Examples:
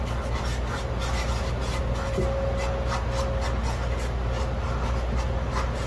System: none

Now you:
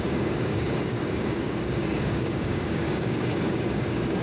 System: codec, DAC